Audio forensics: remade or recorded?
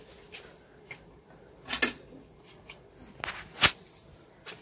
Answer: recorded